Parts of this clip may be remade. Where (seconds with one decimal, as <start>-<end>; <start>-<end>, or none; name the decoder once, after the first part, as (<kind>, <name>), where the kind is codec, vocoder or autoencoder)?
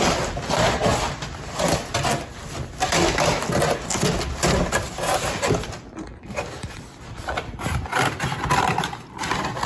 none